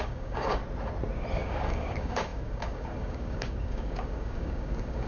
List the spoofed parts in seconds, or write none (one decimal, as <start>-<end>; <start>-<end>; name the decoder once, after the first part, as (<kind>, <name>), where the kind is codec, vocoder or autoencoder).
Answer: 0.0-0.6 (codec, DAC); 1.3-5.1